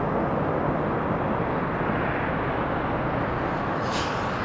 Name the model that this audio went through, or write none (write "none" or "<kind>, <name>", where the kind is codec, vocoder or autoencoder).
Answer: none